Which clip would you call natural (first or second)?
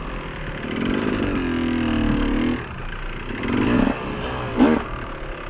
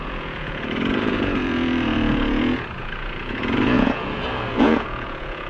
first